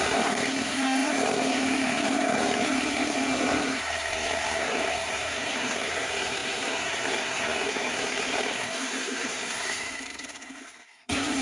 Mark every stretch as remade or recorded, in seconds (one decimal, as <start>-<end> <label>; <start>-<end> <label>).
0.0-11.4 remade